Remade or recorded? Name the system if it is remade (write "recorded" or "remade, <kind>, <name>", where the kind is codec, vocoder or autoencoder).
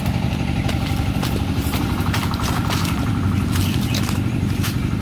recorded